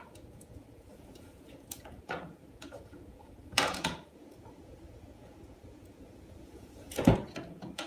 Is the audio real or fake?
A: fake